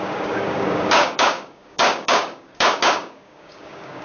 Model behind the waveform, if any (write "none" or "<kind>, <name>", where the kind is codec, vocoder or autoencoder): codec, DAC